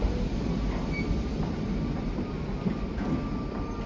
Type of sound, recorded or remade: recorded